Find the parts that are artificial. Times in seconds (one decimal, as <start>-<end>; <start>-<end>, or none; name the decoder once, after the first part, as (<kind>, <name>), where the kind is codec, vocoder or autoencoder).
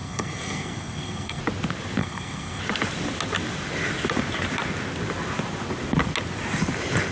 0.0-1.4 (codec, SNAC); 2.0-2.6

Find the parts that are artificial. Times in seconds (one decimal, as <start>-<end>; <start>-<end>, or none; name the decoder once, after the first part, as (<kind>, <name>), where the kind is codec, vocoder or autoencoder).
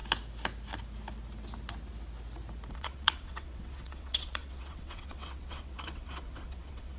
2.7-7.0 (vocoder, WaveNeXt)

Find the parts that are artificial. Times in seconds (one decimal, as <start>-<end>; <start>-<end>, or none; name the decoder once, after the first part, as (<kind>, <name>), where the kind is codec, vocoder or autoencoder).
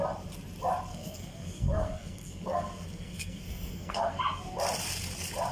0.9-4.2 (codec, SNAC)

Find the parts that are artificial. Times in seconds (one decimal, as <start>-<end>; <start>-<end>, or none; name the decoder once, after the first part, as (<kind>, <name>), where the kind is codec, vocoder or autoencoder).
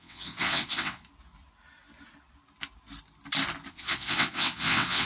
0.0-1.0 (vocoder, WaveNeXt); 3.7-5.1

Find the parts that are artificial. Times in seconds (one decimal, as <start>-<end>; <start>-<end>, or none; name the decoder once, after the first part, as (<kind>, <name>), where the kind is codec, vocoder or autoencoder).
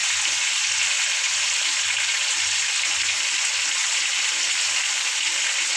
none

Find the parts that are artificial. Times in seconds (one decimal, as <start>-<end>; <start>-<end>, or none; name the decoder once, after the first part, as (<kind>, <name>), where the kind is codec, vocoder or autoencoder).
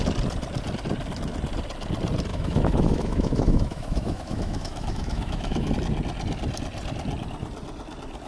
2.3-5.7 (autoencoder, DAC-VAE)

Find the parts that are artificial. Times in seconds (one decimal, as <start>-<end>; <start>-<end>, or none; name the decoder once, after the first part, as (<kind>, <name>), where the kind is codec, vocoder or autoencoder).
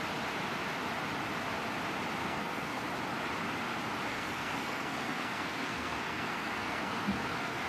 2.2-2.8 (codec, SNAC); 4.1-7.7